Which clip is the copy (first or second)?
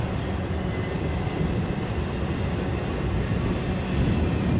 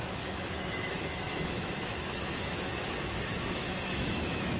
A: second